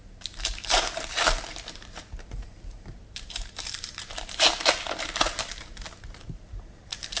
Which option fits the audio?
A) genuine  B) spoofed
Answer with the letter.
B